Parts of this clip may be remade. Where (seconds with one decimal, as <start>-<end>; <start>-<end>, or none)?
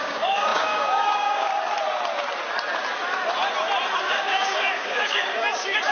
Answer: 0.0-1.5; 4.0-5.9